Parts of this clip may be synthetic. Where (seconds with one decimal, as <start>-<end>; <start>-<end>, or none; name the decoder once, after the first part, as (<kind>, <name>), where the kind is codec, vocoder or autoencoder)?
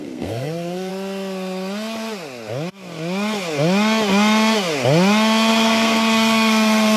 0.0-0.9 (codec, SNAC); 5.5-7.0